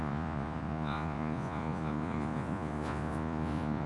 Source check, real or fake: fake